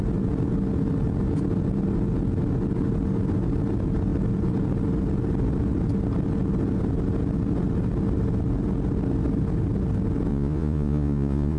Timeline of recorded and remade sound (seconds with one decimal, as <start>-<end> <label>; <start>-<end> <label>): 0.0-10.3 recorded; 10.3-11.6 remade